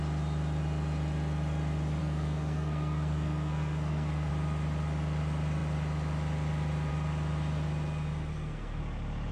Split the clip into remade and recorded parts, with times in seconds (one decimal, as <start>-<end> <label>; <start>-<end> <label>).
0.0-2.0 recorded; 2.0-4.3 remade; 4.3-8.3 recorded; 8.3-8.8 remade; 8.8-9.3 recorded